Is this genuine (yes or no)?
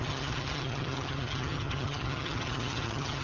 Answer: no